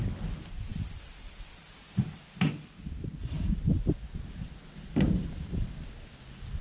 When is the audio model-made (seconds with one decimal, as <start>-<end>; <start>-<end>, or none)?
none